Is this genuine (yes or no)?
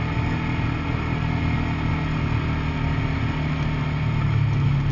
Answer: yes